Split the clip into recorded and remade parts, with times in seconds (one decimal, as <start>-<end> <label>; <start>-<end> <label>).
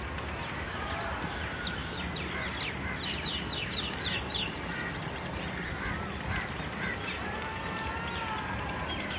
0.0-9.2 recorded